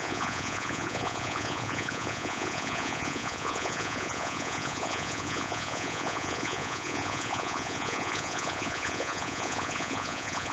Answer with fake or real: fake